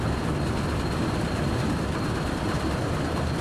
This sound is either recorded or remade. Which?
recorded